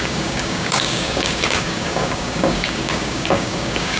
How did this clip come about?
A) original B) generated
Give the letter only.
B